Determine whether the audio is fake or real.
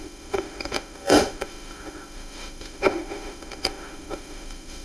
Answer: fake